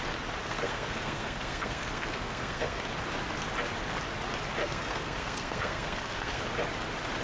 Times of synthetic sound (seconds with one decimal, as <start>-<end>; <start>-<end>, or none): 0.4-2.8; 4.6-6.4